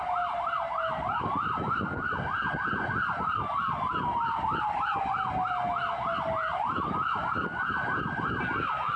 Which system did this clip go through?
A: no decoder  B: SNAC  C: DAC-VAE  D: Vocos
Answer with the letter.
A